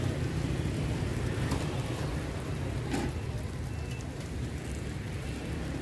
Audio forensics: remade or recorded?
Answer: remade